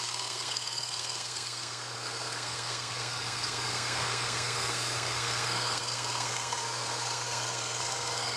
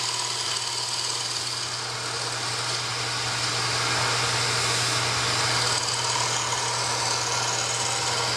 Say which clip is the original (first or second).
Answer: second